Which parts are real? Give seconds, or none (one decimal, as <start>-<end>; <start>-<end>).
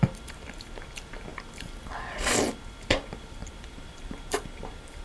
0.0-3.4